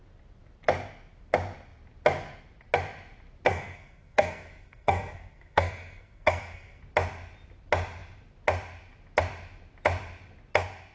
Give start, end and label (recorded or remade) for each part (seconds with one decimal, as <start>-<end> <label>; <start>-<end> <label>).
0.0-3.5 recorded; 3.5-6.8 remade; 6.8-10.9 recorded